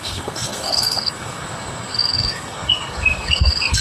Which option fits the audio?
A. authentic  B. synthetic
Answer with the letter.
B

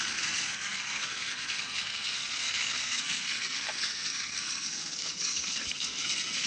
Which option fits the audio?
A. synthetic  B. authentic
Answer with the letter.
A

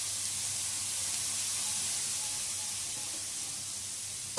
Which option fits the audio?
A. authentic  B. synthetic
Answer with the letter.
A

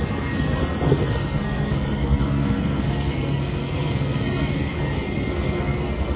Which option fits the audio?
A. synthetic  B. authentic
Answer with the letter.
A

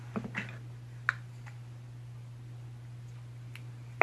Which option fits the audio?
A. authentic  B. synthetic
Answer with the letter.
A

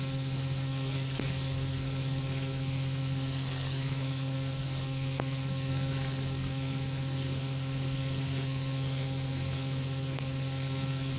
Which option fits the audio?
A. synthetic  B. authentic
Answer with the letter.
A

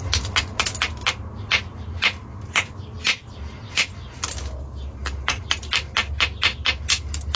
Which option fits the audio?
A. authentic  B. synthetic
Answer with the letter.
A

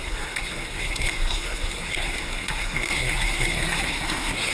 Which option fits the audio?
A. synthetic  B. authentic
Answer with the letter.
A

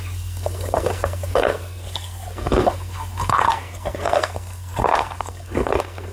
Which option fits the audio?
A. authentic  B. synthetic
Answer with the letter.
B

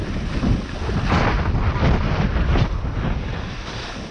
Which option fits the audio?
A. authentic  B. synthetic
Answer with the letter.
A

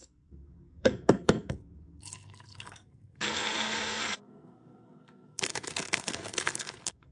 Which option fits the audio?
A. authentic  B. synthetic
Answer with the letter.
B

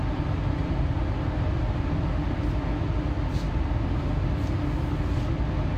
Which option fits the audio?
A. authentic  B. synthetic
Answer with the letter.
A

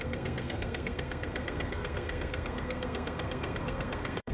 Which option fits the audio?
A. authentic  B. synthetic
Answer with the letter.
B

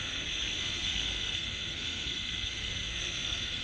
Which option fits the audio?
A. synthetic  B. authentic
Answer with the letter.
A